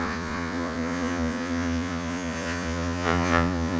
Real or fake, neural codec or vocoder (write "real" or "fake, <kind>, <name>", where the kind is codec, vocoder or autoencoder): fake, vocoder, Vocos